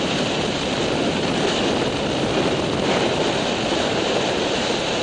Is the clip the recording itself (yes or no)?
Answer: no